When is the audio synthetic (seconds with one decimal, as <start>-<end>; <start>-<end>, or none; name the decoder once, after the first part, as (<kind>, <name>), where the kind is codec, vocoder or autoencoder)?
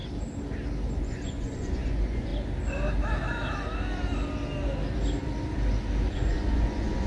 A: 1.0-2.3 (vocoder, Vocos); 6.1-7.1